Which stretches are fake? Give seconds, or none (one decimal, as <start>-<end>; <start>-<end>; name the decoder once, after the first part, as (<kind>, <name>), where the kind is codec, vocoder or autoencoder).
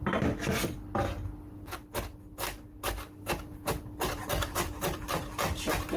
0.0-0.4 (vocoder, BigVGAN v2); 4.0-6.0